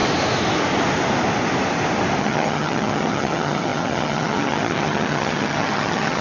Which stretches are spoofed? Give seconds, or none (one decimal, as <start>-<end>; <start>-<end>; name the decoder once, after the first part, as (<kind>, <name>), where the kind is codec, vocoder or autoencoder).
2.2-6.2 (vocoder, HiFi-GAN)